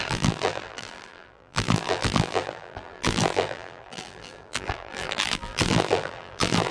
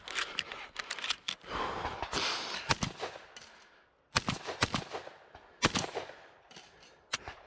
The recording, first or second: second